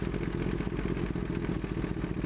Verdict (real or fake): real